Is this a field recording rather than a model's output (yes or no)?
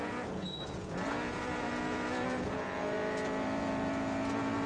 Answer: no